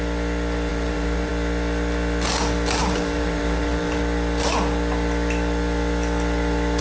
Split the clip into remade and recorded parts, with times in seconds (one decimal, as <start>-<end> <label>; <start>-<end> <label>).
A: 0.0-0.7 recorded; 0.7-1.3 remade; 1.3-2.8 recorded; 2.8-4.0 remade; 4.0-6.8 recorded